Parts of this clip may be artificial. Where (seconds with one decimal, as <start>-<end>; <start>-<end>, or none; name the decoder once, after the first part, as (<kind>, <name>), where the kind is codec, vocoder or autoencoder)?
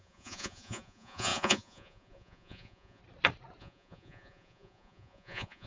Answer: 0.0-3.0 (vocoder, Vocos); 3.6-5.7